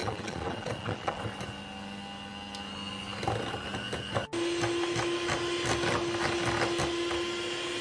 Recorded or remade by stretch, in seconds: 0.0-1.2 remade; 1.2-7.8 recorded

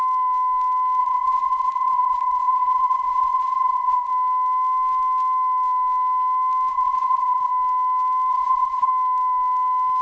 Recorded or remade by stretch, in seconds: 0.0-1.0 recorded; 1.0-4.1 remade; 4.1-6.7 recorded; 6.7-7.5 remade; 7.5-8.3 recorded; 8.3-8.9 remade; 8.9-10.0 recorded